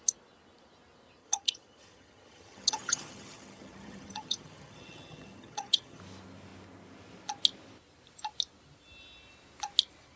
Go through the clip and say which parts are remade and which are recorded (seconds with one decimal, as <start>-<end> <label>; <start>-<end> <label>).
0.0-1.2 recorded; 1.2-6.0 remade; 6.0-10.2 recorded